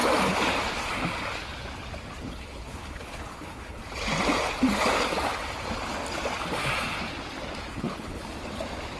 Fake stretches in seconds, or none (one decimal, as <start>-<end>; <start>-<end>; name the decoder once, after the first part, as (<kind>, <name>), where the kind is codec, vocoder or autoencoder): 2.2-3.8 (codec, HILCodec); 7.7-8.2